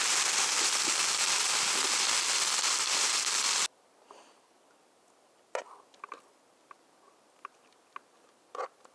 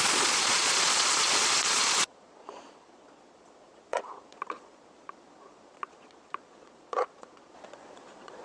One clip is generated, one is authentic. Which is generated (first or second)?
second